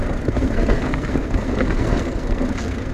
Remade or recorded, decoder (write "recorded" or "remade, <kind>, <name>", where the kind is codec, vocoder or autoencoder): remade, codec, SNAC